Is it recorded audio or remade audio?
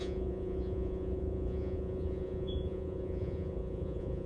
remade